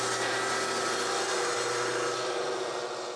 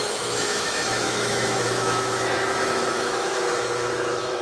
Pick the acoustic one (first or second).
first